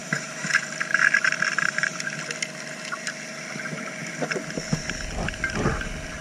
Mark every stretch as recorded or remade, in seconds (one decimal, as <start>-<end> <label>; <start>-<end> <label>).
0.0-0.6 remade; 0.6-6.2 recorded